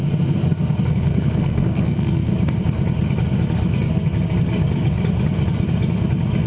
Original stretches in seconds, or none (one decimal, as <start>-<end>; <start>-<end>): 0.0-0.9; 2.3-6.5